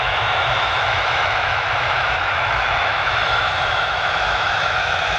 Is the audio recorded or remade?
remade